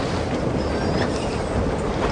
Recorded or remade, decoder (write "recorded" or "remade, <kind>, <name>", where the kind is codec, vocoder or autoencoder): recorded